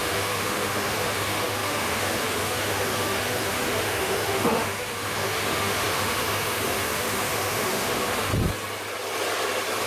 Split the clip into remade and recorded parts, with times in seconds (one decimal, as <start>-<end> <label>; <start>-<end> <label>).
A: 0.0-8.3 remade; 8.3-9.9 recorded